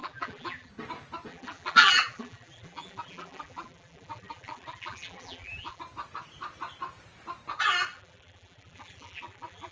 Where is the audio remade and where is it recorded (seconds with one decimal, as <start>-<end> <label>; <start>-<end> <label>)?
0.0-0.7 remade; 0.7-1.3 recorded; 1.3-5.8 remade; 5.8-7.9 recorded; 7.9-9.7 remade